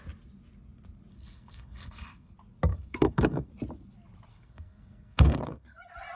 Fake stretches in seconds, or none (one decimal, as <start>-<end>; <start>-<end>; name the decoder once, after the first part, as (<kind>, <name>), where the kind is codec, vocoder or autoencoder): 1.1-2.3 (codec, SNAC); 2.7-3.5; 4.3-5.8